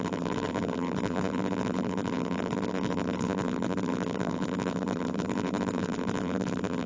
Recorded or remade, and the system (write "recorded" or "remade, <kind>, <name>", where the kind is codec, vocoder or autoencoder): remade, vocoder, BigVGAN v2